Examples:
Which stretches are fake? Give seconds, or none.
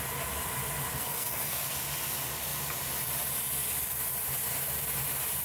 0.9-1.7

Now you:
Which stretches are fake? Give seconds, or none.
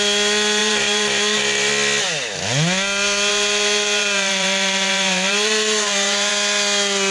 0.6-1.7; 3.3-6.3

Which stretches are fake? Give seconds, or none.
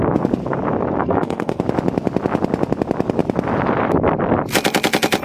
1.0-1.6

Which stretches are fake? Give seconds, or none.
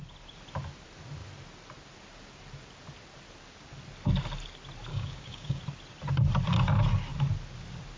4.9-5.6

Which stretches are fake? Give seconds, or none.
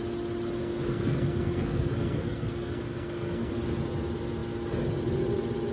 0.6-3.5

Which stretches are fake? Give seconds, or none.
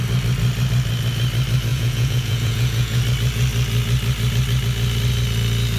1.7-3.0